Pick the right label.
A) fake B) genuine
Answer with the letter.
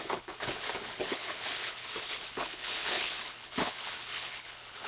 A